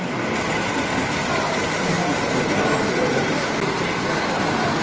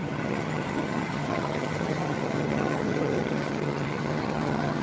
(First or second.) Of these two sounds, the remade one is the second